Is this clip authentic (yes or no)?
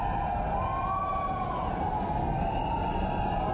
yes